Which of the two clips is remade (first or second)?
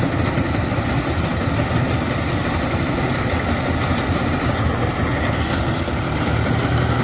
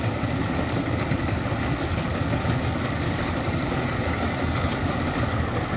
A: second